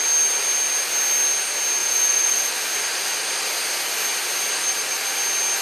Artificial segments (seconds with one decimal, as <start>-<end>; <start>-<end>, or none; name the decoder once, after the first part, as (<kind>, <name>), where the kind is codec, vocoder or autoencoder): 1.8-2.5 (vocoder, Vocos)